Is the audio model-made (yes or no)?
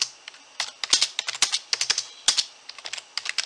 no